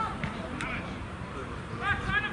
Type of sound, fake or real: fake